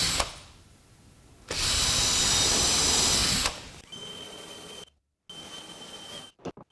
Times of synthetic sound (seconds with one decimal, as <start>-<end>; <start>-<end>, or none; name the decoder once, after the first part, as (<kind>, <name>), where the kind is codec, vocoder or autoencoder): none